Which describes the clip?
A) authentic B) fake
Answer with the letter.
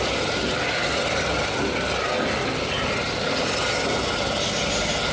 A